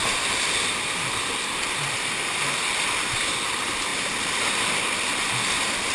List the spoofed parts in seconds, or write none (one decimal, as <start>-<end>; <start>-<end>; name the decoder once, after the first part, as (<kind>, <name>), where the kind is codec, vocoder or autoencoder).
none